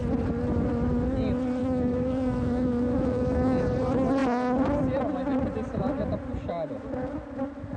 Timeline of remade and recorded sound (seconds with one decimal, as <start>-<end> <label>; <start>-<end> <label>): 0.0-1.6 recorded; 1.6-3.6 remade; 3.6-7.8 recorded